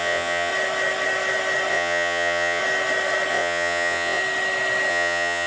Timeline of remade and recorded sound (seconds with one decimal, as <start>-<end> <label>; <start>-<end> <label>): 0.0-0.5 remade; 0.5-1.7 recorded; 1.7-2.6 remade; 2.6-3.3 recorded; 3.3-4.2 remade; 4.2-4.9 recorded; 4.9-5.5 remade